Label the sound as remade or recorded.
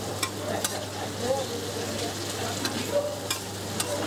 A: recorded